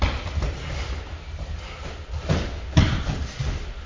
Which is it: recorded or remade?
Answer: recorded